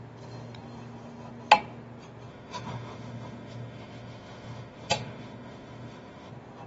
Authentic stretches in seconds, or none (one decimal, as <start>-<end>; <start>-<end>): 0.0-2.3; 6.3-6.7